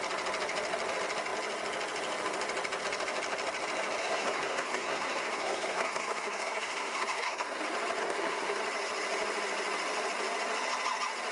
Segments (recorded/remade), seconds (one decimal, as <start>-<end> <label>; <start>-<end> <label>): 0.0-4.0 recorded; 4.0-7.6 remade; 7.6-8.0 recorded; 8.0-8.6 remade; 8.6-11.3 recorded